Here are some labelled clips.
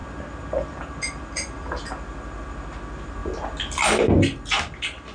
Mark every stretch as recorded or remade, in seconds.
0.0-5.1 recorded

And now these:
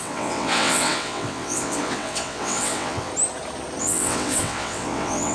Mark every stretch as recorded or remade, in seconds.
0.0-3.1 remade; 3.1-3.8 recorded; 3.8-5.3 remade